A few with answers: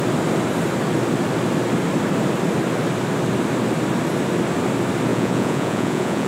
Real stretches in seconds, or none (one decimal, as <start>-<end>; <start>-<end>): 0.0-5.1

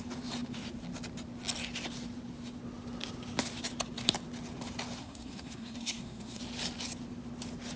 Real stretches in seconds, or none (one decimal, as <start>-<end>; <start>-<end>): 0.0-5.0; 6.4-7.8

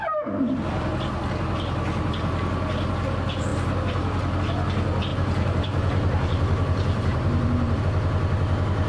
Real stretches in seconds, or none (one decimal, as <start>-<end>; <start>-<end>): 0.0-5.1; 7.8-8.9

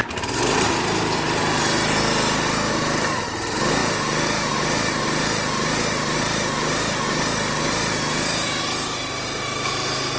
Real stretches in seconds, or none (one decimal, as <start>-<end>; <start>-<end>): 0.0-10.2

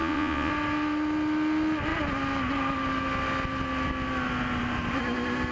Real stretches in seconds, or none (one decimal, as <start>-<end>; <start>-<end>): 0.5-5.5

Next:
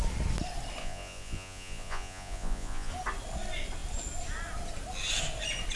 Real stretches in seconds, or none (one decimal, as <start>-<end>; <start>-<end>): 0.0-0.8; 2.9-5.8

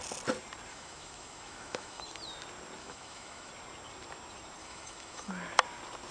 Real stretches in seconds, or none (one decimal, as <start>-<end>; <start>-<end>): 0.0-0.7; 2.0-2.8; 3.5-4.6; 5.3-6.1